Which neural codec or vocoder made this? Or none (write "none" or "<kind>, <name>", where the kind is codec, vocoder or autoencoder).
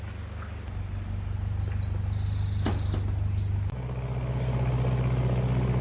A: none